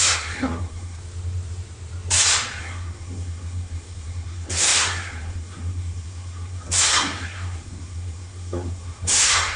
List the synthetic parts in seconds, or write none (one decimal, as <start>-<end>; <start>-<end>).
0.0-1.0; 2.6-9.6